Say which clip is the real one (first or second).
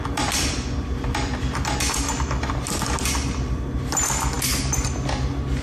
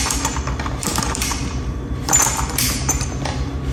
first